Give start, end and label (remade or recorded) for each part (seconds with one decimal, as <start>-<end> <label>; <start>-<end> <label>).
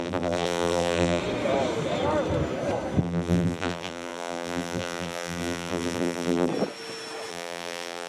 0.0-1.2 remade; 1.2-3.0 recorded; 3.0-6.5 remade; 6.5-7.3 recorded; 7.3-8.1 remade